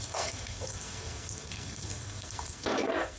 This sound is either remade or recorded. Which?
remade